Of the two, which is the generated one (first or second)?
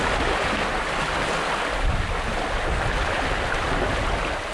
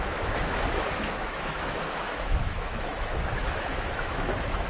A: second